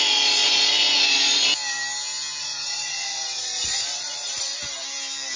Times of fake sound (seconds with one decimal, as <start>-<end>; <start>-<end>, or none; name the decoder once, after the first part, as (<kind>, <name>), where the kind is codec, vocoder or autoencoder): 0.0-1.5 (vocoder, Vocos); 2.4-4.5